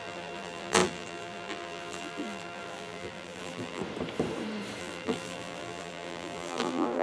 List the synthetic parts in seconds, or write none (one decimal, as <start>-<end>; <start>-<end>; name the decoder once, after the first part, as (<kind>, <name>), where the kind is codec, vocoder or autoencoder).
0.0-3.8 (vocoder, BigVGAN v2); 4.8-7.0